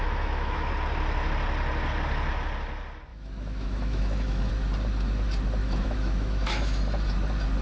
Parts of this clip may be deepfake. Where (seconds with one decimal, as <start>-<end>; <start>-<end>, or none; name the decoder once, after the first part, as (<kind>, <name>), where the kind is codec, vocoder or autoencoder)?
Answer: 0.0-0.7 (autoencoder, DAC-VAE); 3.1-4.5; 5.6-6.8